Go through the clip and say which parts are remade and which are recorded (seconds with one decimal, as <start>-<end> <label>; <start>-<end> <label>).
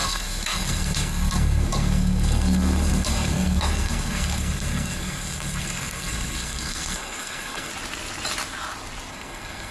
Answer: 0.0-7.7 remade; 7.7-9.1 recorded; 9.1-9.7 remade